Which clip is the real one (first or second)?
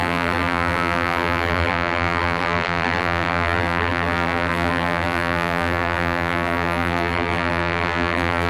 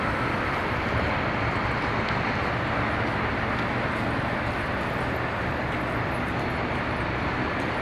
second